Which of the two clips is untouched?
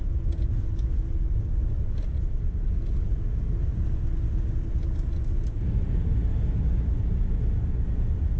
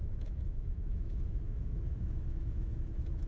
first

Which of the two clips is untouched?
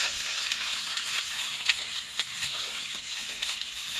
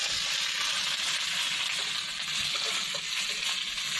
second